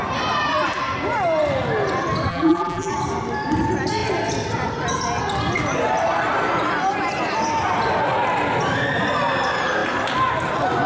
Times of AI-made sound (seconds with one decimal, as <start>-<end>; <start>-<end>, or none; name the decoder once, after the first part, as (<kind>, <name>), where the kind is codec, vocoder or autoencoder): 2.3-2.9 (vocoder, BigVGAN v2)